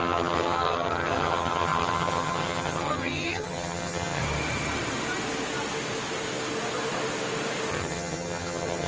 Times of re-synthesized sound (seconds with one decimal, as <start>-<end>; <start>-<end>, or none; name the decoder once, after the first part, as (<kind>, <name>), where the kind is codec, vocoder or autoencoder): 0.0-4.2 (vocoder, HiFi-GAN); 7.7-8.9